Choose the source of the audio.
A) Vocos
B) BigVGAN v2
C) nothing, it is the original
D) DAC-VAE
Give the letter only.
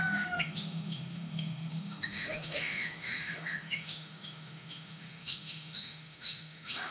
D